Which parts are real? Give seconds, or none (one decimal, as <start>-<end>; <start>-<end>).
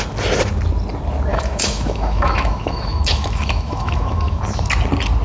0.0-1.3; 4.4-5.2